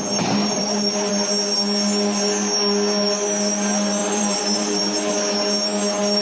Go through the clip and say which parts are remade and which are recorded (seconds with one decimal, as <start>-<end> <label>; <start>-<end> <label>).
0.0-0.4 recorded; 0.4-1.1 remade; 1.1-4.0 recorded; 4.0-5.1 remade; 5.1-6.2 recorded